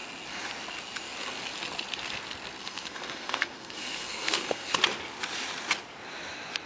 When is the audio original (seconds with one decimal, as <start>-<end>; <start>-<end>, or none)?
0.0-2.6; 4.7-6.7